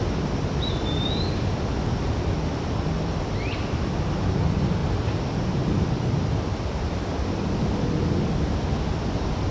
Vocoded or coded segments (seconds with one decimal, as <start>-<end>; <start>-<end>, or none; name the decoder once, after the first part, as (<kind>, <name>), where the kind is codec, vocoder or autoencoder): none